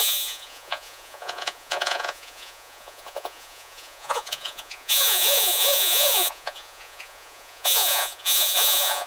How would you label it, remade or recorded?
remade